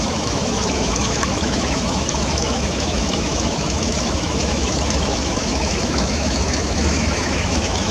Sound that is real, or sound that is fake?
fake